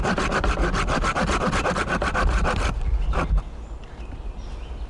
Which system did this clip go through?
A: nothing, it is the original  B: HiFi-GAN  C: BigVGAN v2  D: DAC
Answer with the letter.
A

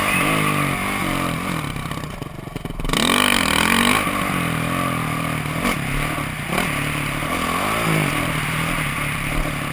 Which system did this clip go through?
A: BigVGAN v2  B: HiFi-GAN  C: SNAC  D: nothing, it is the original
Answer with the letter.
D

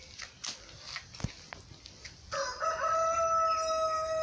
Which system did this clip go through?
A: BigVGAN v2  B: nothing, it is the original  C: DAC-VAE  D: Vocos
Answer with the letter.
B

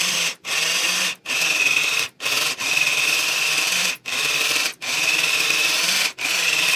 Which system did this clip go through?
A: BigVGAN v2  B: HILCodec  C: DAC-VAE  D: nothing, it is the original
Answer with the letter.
A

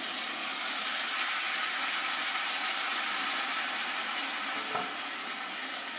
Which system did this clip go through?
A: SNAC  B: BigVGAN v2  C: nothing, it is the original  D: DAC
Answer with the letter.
C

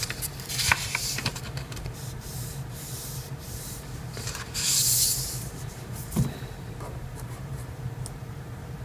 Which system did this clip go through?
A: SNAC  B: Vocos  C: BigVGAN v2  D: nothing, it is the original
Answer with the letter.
C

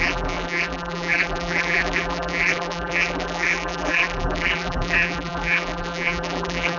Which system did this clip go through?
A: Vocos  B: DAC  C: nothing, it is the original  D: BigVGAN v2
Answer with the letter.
D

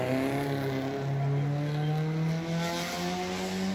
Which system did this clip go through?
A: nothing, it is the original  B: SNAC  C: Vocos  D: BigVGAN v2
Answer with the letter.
A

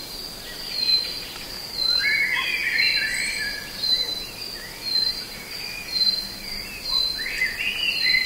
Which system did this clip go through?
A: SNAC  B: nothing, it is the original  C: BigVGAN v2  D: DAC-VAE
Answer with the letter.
B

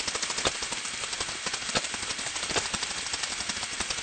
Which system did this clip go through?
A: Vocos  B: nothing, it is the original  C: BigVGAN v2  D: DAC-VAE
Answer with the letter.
B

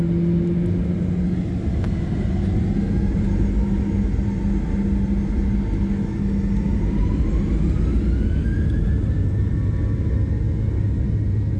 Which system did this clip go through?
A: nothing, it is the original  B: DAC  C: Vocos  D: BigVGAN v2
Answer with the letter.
A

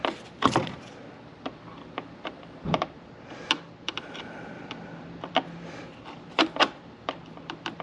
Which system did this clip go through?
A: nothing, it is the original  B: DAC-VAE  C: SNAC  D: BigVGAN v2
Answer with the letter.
D